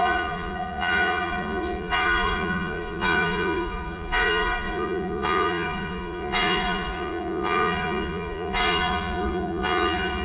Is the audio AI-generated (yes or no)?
yes